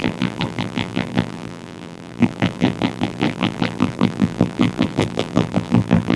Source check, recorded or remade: remade